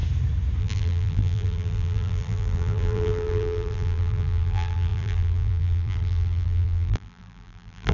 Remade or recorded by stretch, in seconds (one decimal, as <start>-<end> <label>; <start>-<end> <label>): 0.0-0.6 recorded; 0.6-7.9 remade